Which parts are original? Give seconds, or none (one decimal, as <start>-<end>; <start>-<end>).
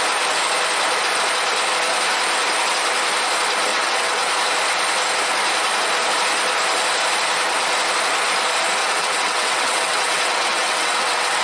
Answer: 0.0-3.7; 4.3-8.8